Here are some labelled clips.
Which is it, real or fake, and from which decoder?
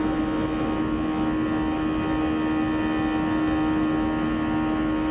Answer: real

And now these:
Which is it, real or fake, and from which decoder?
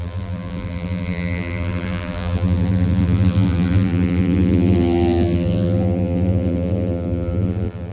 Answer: fake, vocoder, BigVGAN v2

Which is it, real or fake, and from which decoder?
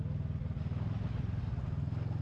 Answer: real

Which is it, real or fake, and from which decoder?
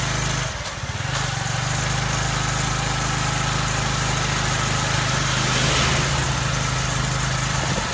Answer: real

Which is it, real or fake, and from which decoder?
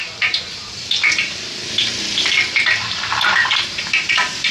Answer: fake, vocoder, BigVGAN v2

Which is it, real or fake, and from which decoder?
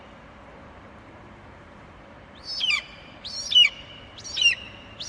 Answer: fake, vocoder, BigVGAN v2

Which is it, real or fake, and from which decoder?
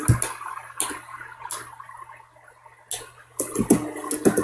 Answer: real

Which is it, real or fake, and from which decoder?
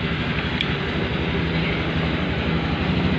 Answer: real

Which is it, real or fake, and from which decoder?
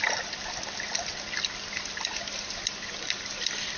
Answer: real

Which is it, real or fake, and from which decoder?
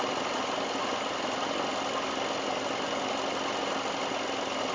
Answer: real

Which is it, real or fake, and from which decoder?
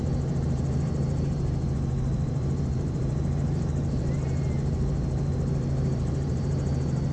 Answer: fake, vocoder, BigVGAN v2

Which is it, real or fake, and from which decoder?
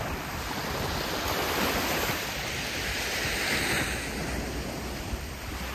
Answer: fake, vocoder, BigVGAN v2